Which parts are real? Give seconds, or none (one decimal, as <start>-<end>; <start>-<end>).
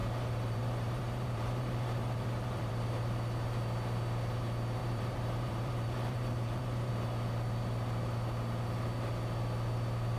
2.7-4.8; 6.9-10.2